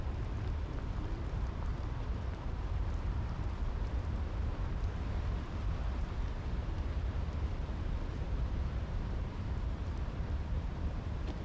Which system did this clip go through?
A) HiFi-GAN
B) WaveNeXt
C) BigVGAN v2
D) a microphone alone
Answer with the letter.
C